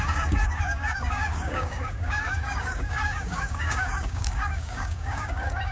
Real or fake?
fake